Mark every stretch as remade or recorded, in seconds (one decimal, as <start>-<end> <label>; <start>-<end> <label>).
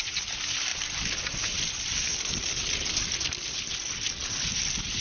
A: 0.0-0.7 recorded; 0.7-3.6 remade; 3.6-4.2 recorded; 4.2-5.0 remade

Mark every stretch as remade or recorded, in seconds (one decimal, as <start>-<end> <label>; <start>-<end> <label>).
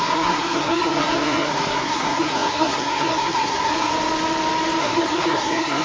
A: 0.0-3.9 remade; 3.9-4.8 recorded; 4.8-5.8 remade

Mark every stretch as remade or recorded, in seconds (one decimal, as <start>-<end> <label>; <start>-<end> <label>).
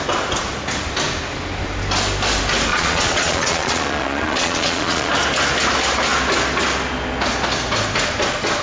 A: 0.0-2.7 recorded; 2.7-5.1 remade; 5.1-8.6 recorded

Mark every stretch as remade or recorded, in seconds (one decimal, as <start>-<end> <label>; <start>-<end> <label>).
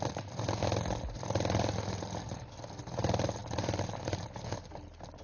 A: 0.0-5.2 recorded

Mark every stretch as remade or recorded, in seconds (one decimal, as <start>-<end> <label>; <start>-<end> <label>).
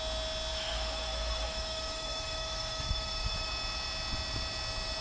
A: 0.0-0.5 recorded; 0.5-3.5 remade; 3.5-5.0 recorded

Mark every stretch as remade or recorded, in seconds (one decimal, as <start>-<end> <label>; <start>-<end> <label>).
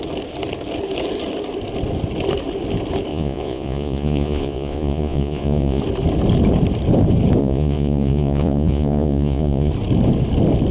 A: 0.0-3.1 recorded; 3.1-5.8 remade; 5.8-7.4 recorded; 7.4-9.7 remade; 9.7-10.7 recorded